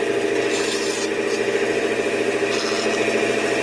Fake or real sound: real